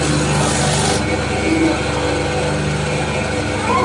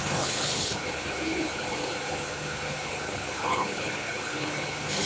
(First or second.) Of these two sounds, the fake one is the second